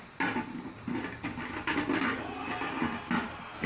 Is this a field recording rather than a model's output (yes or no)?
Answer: yes